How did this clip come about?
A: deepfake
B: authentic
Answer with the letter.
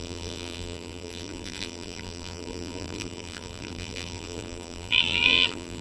A